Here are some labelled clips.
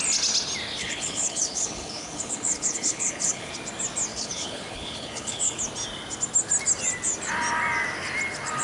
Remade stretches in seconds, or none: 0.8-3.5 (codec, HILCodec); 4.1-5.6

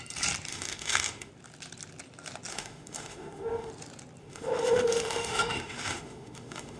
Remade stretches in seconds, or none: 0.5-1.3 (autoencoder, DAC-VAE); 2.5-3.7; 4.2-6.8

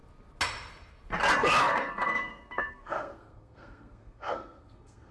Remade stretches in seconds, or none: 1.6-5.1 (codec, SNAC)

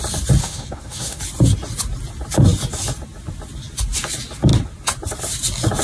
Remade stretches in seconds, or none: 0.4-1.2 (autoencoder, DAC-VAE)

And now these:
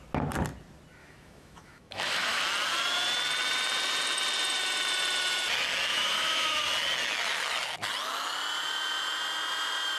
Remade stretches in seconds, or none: 1.0-2.4 (autoencoder, DAC-VAE); 5.9-6.6

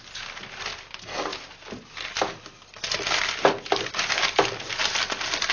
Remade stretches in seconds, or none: none

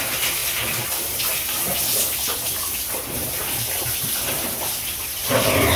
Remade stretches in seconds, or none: none